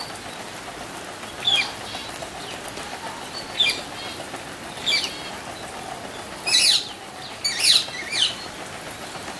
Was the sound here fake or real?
real